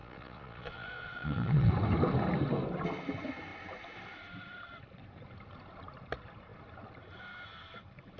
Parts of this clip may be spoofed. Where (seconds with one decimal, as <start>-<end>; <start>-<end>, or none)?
0.0-1.7